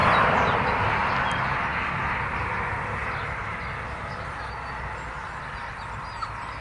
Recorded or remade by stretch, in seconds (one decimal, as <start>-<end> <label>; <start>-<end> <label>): 0.0-6.6 recorded